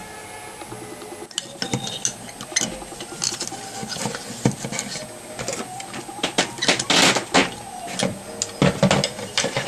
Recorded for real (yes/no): yes